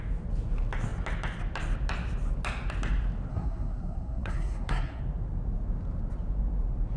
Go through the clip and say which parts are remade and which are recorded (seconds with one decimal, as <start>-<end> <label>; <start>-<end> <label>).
0.0-3.3 recorded; 3.3-5.0 remade; 5.0-7.0 recorded